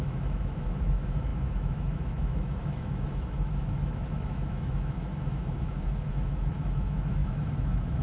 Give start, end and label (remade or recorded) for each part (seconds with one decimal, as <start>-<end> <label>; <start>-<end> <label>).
0.0-8.0 remade